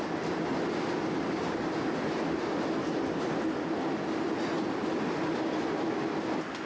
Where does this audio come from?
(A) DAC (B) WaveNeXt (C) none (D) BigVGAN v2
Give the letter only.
C